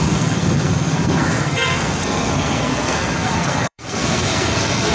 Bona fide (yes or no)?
no